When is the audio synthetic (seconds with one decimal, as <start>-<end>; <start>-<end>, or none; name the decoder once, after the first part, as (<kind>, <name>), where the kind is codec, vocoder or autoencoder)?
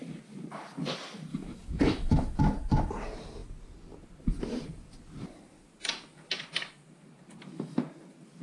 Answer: 1.3-2.4 (autoencoder, DAC-VAE)